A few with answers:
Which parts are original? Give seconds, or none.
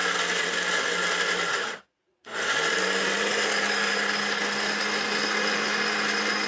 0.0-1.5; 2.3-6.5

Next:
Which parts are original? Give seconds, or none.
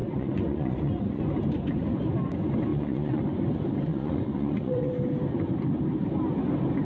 1.2-2.7; 3.2-3.9; 4.9-6.8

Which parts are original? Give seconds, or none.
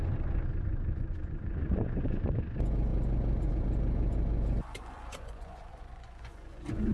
none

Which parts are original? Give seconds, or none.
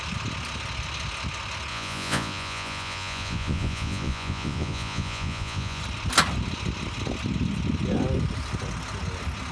0.0-1.7; 5.8-9.5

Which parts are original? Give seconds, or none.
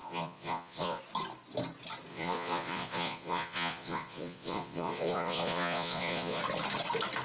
1.0-2.1; 6.4-7.2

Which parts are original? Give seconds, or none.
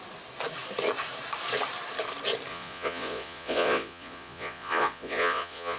0.0-2.5